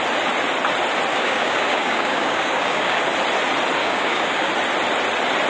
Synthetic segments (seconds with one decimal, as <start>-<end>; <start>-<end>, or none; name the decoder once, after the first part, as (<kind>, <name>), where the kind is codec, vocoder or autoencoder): 1.1-3.0 (codec, DAC); 3.8-4.5